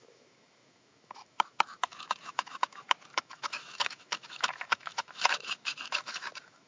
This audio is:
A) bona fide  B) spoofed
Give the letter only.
B